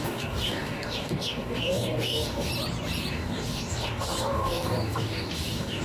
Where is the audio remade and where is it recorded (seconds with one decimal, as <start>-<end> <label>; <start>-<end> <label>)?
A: 0.0-2.5 remade; 2.5-3.1 recorded; 3.1-5.8 remade